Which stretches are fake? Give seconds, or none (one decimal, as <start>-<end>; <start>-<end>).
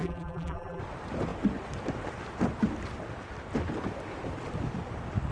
0.0-0.8